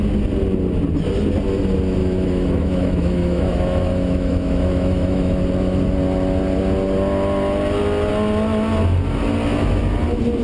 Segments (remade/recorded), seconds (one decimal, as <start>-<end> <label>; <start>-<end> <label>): 0.0-2.0 recorded; 2.0-5.4 remade; 5.4-10.4 recorded